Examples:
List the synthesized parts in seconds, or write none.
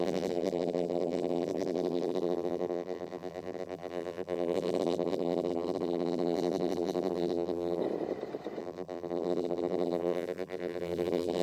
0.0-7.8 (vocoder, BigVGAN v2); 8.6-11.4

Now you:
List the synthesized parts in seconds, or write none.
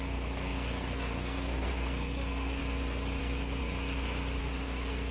0.0-2.6 (codec, SNAC); 3.2-3.6; 4.4-5.1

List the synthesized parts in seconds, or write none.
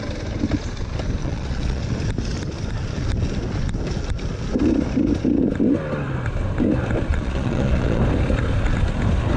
1.2-1.8 (vocoder, Vocos); 7.1-8.0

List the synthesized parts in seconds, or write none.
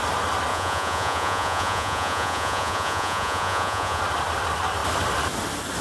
0.5-4.0 (vocoder, Vocos)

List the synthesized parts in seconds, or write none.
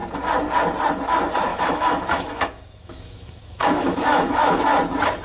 1.5-4.6 (autoencoder, DAC-VAE)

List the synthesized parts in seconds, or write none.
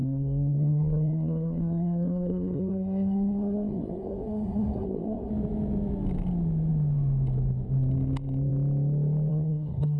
0.0-5.3 (codec, SNAC); 9.3-10.0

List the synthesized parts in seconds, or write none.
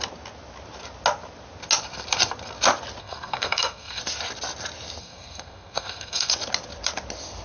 3.0-4.0 (codec, SNAC); 5.0-6.3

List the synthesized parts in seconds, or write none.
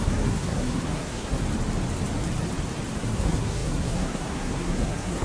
0.0-1.4 (codec, SNAC); 3.0-5.2